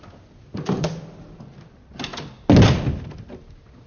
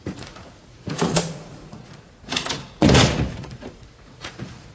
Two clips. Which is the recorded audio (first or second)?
first